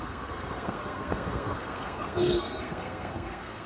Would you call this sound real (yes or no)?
no